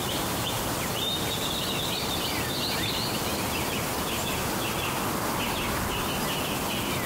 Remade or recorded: recorded